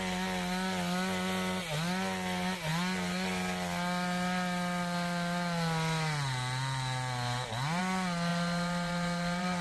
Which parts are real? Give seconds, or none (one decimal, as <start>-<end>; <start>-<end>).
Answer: 0.0-8.3

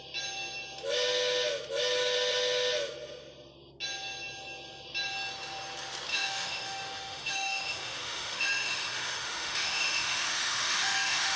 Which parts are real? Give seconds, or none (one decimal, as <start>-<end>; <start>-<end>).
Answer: 0.0-6.1

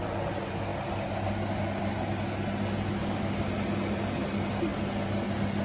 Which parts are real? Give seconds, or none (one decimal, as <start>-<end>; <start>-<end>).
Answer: 0.0-3.0; 3.5-5.6

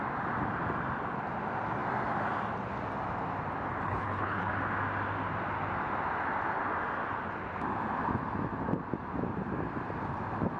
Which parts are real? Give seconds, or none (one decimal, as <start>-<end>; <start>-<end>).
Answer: 0.0-3.8; 4.5-10.6